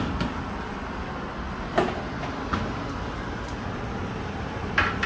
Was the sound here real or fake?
real